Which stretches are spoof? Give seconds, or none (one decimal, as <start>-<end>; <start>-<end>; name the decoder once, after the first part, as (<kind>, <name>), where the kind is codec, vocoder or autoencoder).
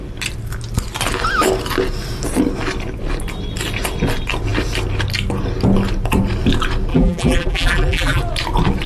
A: 6.9-8.2 (vocoder, BigVGAN v2)